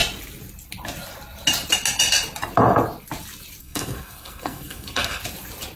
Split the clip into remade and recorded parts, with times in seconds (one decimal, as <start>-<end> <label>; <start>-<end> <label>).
0.0-3.6 recorded; 3.6-5.2 remade; 5.2-5.8 recorded